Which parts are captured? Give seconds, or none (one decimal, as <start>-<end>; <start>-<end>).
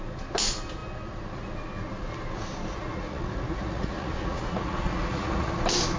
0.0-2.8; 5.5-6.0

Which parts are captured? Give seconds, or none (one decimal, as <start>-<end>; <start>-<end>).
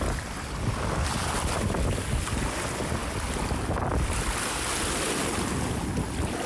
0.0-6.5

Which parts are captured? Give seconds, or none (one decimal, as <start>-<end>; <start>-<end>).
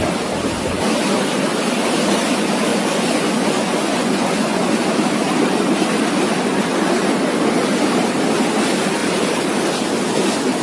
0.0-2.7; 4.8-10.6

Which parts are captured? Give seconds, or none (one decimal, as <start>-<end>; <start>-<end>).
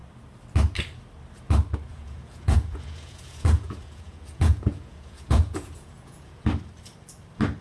0.0-1.9; 6.5-7.6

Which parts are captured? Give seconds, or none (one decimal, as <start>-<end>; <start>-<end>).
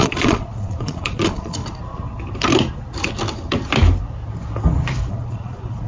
1.6-5.1